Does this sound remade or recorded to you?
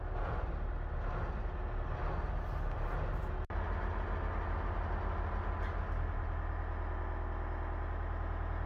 recorded